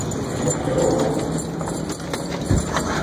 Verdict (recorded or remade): recorded